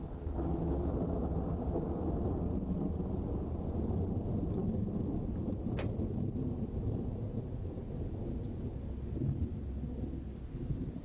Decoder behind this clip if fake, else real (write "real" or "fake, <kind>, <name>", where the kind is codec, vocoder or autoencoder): real